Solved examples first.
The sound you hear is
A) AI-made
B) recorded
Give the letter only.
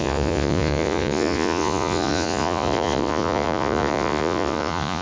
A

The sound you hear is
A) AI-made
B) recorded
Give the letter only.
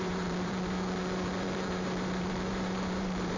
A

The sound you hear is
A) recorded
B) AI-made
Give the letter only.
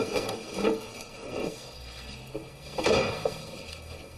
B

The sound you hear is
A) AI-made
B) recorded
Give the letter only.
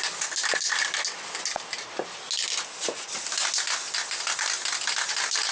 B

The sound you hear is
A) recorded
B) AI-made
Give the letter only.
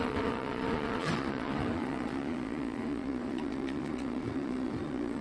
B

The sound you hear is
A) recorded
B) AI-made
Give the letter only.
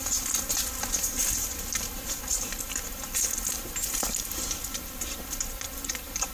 A